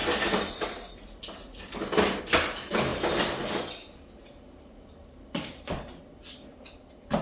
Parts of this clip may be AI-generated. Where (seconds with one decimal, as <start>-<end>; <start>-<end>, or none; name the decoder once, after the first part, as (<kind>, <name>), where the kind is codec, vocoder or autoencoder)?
none